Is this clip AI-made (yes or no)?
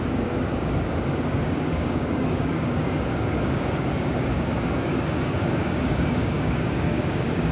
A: yes